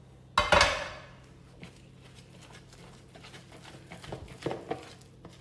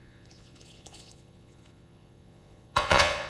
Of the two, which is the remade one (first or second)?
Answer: second